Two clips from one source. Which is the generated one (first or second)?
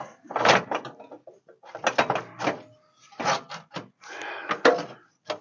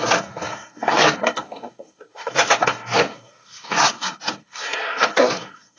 second